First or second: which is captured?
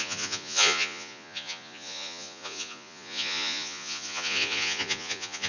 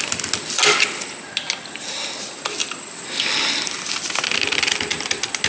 second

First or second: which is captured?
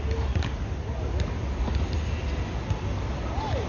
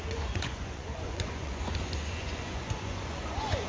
first